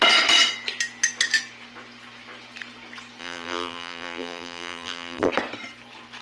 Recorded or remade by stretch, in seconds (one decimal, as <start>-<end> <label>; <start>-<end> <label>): 0.0-3.2 recorded; 3.2-5.3 remade; 5.3-6.2 recorded